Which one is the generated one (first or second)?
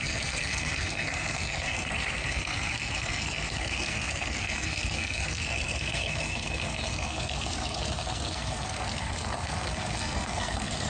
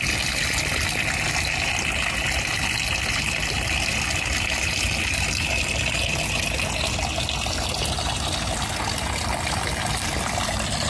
first